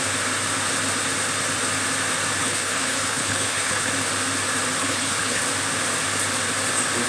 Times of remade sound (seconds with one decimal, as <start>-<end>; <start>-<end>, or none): 2.4-3.9; 4.8-5.4